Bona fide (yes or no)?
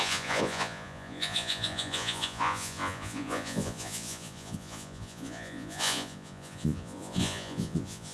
no